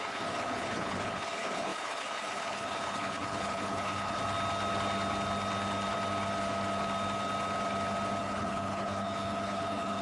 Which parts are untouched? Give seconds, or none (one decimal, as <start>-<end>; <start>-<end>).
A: 4.2-8.2